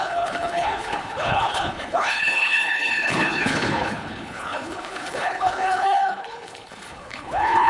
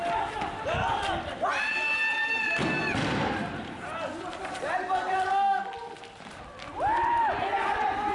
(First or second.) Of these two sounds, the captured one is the second